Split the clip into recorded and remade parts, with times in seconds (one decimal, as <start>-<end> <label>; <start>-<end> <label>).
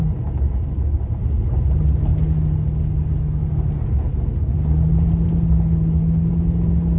0.0-7.0 recorded